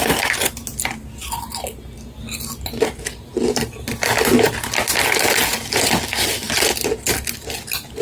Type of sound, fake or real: real